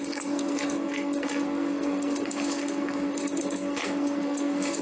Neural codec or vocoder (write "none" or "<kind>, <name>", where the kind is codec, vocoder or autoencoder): codec, SNAC